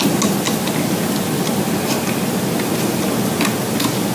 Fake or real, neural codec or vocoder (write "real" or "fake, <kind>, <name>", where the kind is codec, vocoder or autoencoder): real